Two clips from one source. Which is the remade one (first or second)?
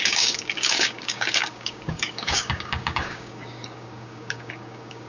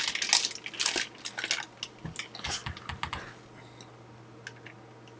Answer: first